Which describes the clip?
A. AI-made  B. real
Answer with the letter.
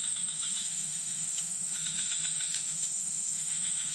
A